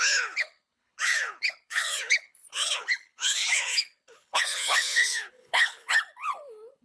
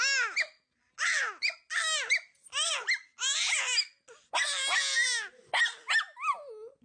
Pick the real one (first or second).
second